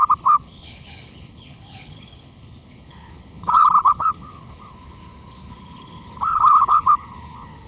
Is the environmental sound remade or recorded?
remade